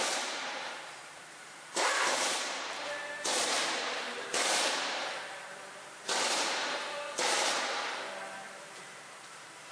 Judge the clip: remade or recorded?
remade